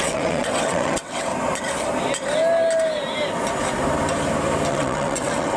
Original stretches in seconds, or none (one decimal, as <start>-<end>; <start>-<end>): 1.3-4.7